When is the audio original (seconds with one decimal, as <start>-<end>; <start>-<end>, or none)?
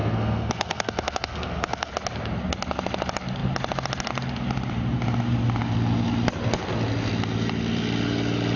1.9-8.6